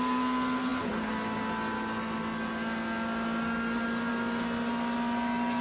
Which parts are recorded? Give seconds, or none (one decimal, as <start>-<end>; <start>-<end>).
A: 0.0-5.6